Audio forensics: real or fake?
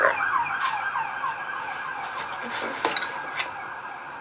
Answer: real